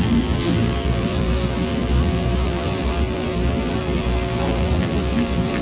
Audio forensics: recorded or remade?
remade